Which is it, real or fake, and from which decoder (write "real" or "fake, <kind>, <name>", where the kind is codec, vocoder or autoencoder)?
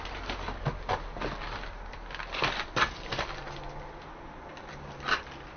real